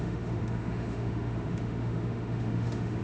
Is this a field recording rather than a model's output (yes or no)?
no